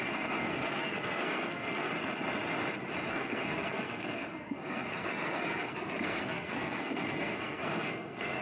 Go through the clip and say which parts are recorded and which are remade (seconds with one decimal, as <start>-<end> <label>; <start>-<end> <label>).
0.0-1.9 remade; 1.9-3.1 recorded; 3.1-8.4 remade